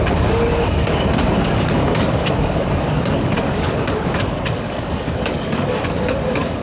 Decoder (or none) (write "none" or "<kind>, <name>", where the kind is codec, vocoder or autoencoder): codec, DAC